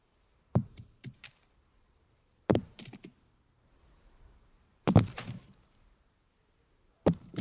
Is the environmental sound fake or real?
fake